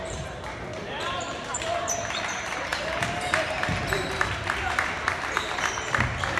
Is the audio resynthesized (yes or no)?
yes